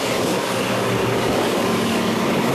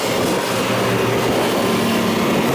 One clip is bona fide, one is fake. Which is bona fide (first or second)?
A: second